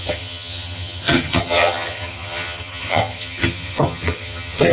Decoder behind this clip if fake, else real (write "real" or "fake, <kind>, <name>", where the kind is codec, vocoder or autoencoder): fake, vocoder, HiFi-GAN